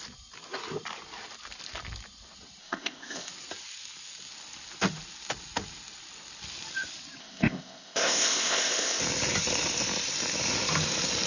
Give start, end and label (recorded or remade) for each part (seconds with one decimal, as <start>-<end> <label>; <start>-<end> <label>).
0.0-2.6 recorded; 2.6-3.3 remade; 3.3-7.2 recorded; 7.2-9.0 remade; 9.0-11.3 recorded